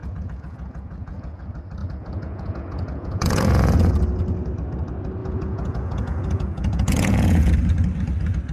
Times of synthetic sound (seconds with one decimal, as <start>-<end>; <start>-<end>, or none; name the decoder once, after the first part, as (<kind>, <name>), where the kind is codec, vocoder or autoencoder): 0.0-1.4 (vocoder, Vocos); 1.8-3.9; 5.2-7.5